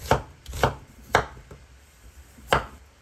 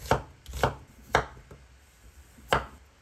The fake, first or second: first